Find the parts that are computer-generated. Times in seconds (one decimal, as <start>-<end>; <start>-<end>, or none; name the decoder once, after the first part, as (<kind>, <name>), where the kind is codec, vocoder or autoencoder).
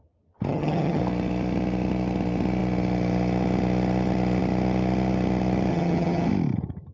0.5-1.0 (vocoder, HiFi-GAN); 5.7-6.3